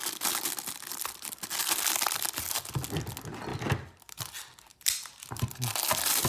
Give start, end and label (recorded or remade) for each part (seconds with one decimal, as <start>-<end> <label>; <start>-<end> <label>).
0.0-6.3 recorded